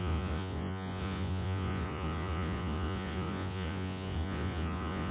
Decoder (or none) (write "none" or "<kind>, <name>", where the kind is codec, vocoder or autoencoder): vocoder, Vocos